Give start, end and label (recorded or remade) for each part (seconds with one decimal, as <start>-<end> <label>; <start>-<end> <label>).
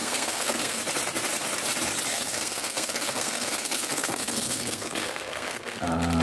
0.0-0.8 remade; 0.8-2.1 recorded; 2.1-5.8 remade; 5.8-6.2 recorded